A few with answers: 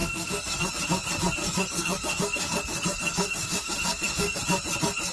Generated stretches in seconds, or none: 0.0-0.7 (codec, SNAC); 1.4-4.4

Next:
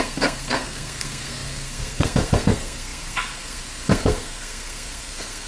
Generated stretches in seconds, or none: 0.0-5.5 (codec, SNAC)